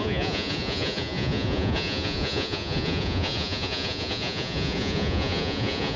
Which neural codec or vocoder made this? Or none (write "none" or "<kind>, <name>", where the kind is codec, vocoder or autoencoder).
vocoder, Vocos